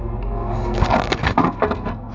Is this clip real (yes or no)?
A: no